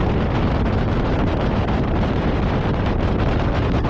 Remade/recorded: recorded